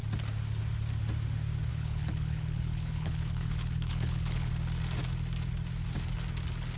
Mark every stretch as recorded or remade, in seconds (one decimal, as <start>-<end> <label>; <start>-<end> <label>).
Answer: 0.0-1.7 recorded; 1.7-4.5 remade; 4.5-6.8 recorded